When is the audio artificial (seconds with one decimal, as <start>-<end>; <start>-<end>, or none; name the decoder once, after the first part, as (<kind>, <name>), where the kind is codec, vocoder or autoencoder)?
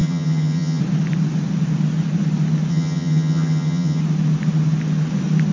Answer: 0.0-0.8 (vocoder, HiFi-GAN); 2.7-4.0